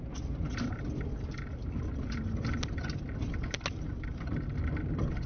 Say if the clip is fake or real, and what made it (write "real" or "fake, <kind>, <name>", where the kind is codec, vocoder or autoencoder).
real